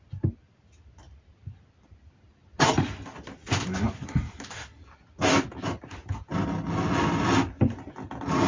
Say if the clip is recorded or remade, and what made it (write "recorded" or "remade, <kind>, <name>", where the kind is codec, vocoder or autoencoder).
recorded